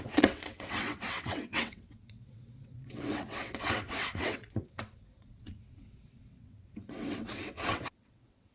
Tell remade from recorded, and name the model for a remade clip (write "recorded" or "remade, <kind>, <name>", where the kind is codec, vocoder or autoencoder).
remade, vocoder, WaveNeXt